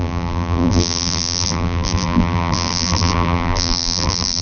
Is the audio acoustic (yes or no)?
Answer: no